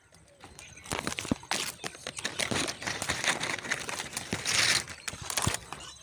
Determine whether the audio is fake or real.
real